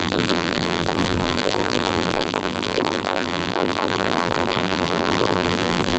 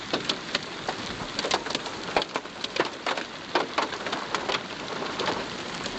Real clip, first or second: second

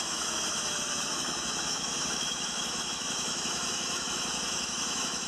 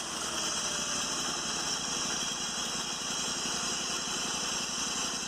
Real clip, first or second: second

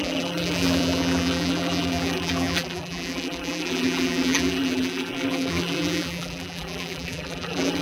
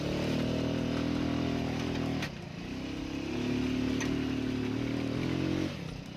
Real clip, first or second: second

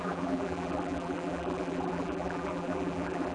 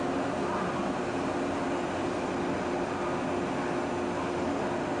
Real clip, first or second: second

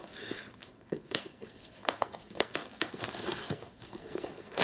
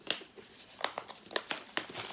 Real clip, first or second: second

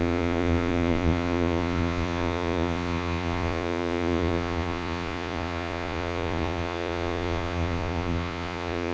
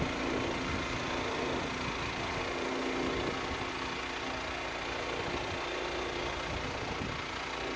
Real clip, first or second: second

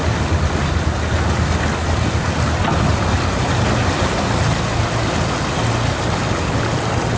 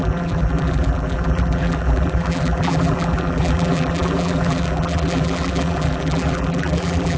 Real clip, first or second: first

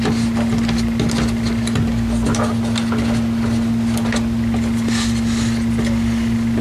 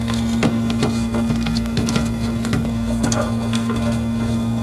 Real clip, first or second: first